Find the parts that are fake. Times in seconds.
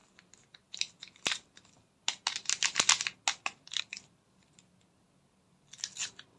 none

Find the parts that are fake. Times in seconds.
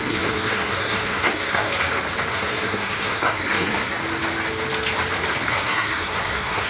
0.0-1.7 (codec, SNAC); 2.3-4.0; 5.5-6.7